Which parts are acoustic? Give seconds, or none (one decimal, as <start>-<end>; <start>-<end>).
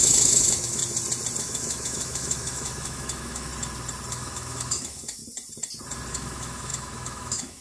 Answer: 0.8-1.4; 3.5-4.1; 5.2-6.1